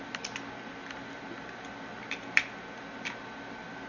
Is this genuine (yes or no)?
yes